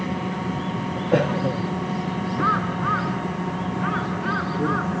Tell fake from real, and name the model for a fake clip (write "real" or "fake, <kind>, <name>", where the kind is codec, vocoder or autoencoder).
real